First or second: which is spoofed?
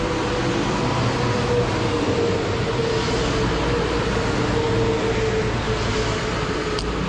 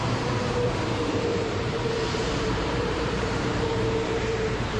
second